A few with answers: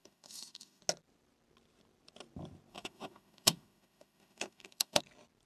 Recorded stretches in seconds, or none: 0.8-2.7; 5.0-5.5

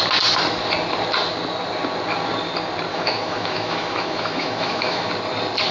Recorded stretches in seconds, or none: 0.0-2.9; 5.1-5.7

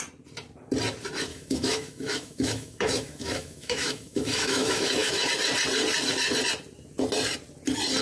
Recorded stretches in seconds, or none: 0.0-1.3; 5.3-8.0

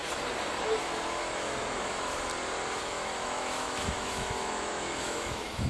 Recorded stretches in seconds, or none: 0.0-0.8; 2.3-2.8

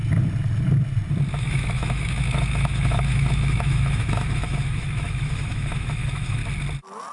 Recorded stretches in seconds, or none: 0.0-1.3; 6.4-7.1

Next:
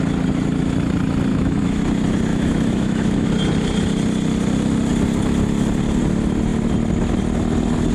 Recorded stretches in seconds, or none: 0.0-1.3; 1.8-2.3; 3.3-7.9

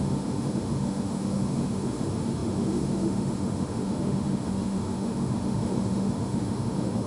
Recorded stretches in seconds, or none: none

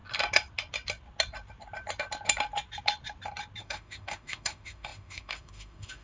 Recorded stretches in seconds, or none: 0.0-3.6